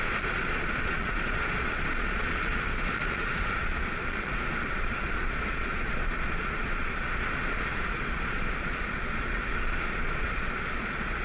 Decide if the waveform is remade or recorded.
remade